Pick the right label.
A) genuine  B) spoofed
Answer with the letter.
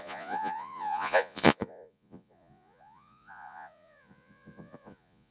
B